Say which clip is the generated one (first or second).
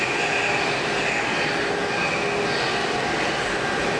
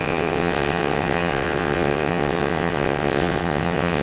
second